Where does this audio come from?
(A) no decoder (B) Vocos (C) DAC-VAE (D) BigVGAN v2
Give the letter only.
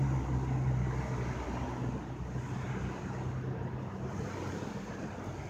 A